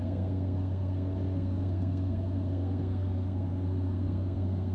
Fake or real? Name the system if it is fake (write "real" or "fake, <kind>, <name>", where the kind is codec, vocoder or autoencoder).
fake, codec, SNAC